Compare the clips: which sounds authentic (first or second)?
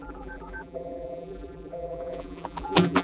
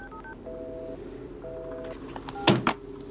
second